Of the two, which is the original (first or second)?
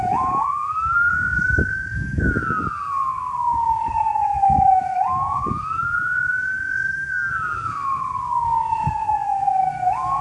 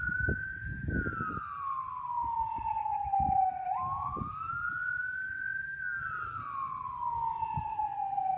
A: second